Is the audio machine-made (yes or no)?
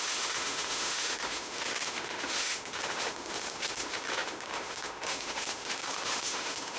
yes